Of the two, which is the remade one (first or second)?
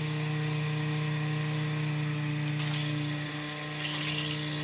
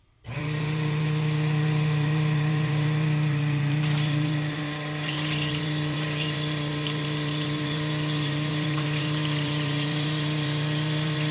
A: second